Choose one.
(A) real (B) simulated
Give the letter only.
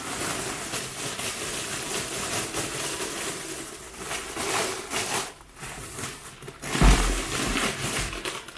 A